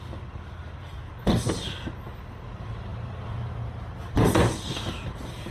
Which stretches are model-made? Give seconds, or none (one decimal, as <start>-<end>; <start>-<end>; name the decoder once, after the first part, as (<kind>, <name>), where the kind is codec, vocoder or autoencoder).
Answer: 2.9-3.5 (vocoder, BigVGAN v2)